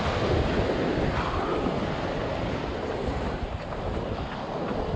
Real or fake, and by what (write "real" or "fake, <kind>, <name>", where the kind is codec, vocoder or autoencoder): real